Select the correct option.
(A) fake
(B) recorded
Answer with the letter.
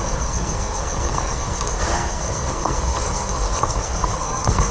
A